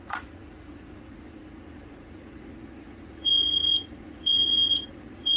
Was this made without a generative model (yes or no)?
no